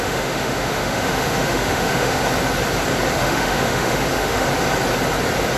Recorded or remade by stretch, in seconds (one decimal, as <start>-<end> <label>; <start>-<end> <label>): 0.0-2.2 remade; 2.2-3.2 recorded; 3.2-4.5 remade; 4.5-5.6 recorded